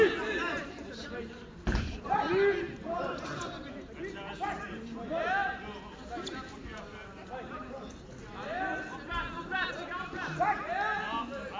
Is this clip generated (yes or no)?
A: no